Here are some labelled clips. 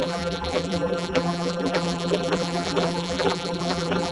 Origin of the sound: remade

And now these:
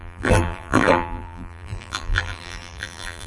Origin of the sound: remade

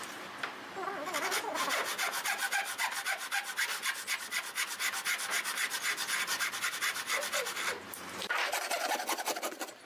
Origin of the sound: recorded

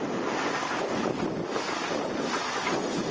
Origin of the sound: recorded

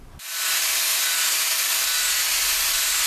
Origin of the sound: recorded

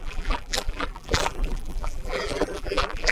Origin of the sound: remade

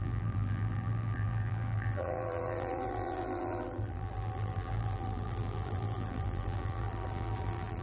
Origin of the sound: remade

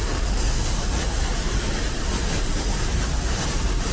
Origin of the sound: remade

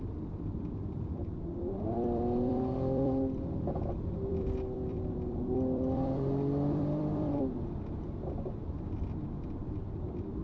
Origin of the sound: remade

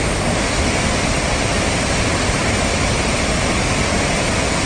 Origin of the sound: recorded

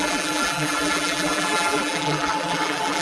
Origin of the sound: remade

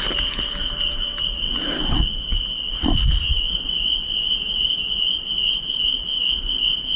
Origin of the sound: recorded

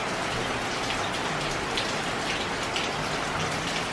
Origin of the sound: recorded